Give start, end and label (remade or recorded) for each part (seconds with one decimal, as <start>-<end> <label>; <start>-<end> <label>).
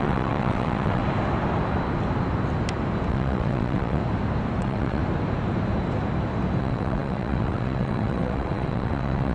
0.0-1.0 remade; 1.0-3.1 recorded; 3.1-4.0 remade; 4.0-4.6 recorded; 4.6-5.0 remade; 5.0-6.6 recorded; 6.6-9.3 remade